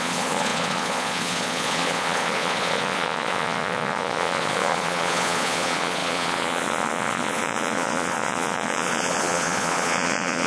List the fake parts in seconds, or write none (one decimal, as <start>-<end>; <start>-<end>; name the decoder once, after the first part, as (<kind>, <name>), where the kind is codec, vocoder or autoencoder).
0.0-10.5 (vocoder, Vocos)